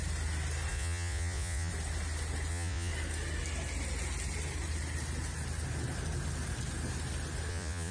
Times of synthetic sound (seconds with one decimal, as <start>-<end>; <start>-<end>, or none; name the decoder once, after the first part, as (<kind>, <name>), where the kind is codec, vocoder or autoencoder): 0.7-1.7 (vocoder, Vocos); 2.5-2.9; 7.5-7.9

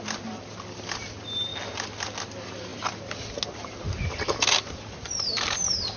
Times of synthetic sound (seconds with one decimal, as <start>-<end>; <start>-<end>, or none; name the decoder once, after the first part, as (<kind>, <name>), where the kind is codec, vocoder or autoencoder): 0.0-1.5 (vocoder, BigVGAN v2); 2.2-2.7; 4.2-6.0

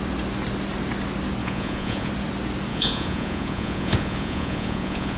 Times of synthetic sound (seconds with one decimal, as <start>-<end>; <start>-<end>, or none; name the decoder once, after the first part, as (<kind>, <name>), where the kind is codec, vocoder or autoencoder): 1.4-2.1 (vocoder, Vocos); 2.7-5.2

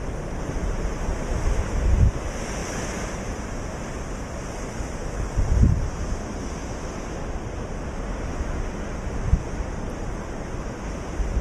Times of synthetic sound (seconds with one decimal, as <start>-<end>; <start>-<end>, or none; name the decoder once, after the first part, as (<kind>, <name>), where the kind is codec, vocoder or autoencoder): 1.1-2.0 (vocoder, BigVGAN v2); 2.6-4.6; 6.6-8.3

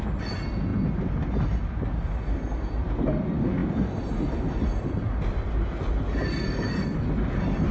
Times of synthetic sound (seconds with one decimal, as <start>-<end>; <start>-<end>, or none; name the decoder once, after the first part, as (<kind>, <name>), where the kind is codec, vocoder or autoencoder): none